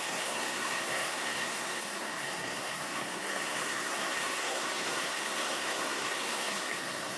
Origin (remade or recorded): remade